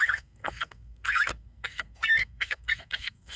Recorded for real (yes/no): no